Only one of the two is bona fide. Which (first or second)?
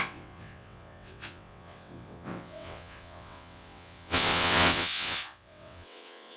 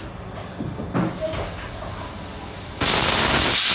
second